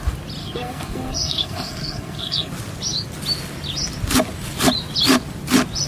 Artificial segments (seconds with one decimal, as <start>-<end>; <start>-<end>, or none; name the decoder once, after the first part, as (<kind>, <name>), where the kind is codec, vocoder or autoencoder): 0.4-2.5 (codec, SNAC)